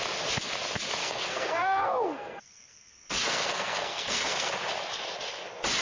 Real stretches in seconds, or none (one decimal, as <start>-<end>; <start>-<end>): 0.0-1.0; 4.5-5.8